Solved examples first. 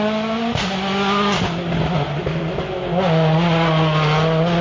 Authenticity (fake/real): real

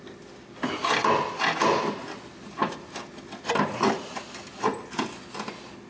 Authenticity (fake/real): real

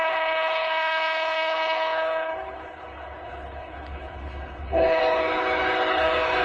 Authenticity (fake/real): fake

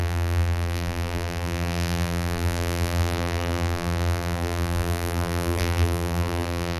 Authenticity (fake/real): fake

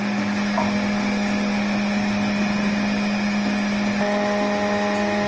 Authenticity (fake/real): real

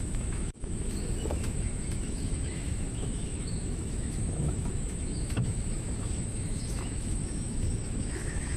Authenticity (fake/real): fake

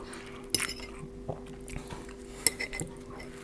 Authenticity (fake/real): real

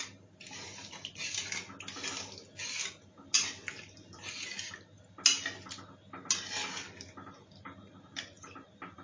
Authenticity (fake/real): real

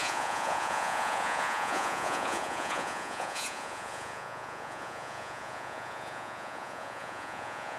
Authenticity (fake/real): fake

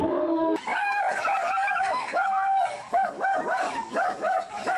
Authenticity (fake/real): fake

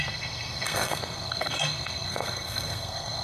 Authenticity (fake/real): fake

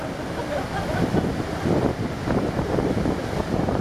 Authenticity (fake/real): real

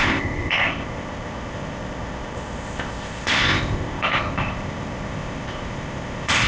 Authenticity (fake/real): fake